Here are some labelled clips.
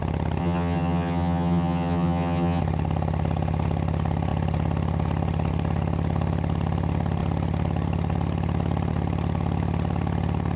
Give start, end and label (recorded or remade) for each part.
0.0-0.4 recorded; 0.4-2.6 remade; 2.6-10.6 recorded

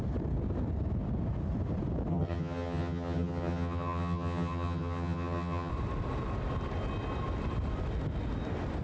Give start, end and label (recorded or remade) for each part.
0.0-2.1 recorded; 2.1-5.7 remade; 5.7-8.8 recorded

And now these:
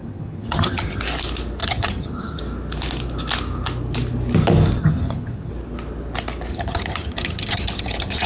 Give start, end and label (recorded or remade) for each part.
0.0-1.0 remade; 1.0-1.6 recorded; 1.6-2.4 remade; 2.4-4.8 recorded; 4.8-5.5 remade; 5.5-6.5 recorded; 6.5-8.3 remade

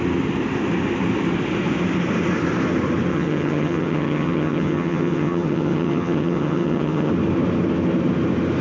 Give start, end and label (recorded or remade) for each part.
0.0-3.1 recorded; 3.1-7.1 remade; 7.1-8.6 recorded

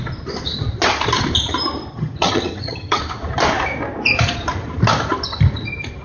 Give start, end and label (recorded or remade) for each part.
0.0-1.9 recorded; 1.9-3.0 remade; 3.0-6.0 recorded